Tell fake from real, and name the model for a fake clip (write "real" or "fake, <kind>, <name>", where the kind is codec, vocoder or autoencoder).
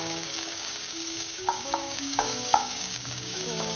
fake, codec, DAC